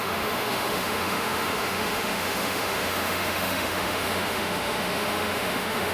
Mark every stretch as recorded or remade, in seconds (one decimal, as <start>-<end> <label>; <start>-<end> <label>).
0.0-5.9 remade